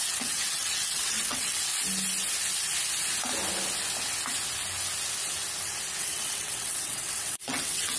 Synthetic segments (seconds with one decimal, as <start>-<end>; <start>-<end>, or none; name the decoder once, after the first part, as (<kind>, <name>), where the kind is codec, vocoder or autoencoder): 0.0-1.7 (vocoder, WaveNeXt); 6.0-8.0